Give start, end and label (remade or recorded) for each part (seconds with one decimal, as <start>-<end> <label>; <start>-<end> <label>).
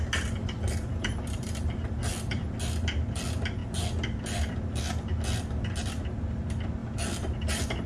0.0-0.4 recorded; 0.4-2.5 remade; 2.5-6.8 recorded; 6.8-7.9 remade